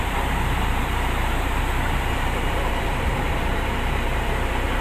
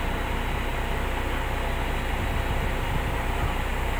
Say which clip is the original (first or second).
second